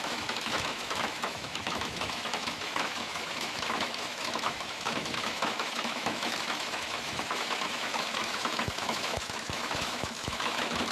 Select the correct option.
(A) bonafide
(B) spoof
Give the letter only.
B